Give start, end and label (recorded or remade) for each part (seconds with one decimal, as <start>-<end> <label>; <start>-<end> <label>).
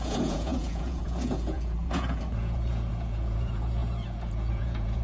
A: 0.0-5.0 remade